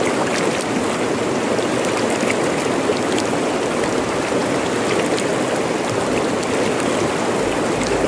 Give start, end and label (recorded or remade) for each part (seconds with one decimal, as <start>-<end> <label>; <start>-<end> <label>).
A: 0.0-8.1 recorded